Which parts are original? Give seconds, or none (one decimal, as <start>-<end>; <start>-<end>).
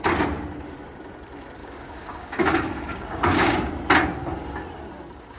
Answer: 0.0-1.6; 3.7-5.4